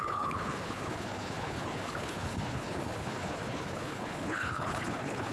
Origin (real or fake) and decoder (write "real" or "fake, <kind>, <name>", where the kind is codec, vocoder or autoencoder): fake, codec, HILCodec